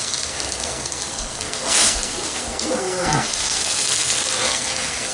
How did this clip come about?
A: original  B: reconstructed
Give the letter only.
B